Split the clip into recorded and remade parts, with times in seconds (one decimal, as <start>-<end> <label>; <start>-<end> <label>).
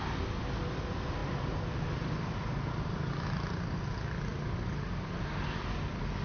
0.0-1.2 recorded; 1.2-3.7 remade; 3.7-6.2 recorded